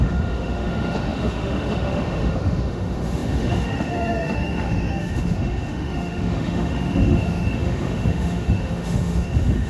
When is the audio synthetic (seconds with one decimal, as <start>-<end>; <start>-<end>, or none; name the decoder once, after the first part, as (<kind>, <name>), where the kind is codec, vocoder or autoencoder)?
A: 0.0-9.7 (autoencoder, DAC-VAE)